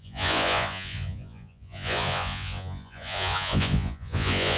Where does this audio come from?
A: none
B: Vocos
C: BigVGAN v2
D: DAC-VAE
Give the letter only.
B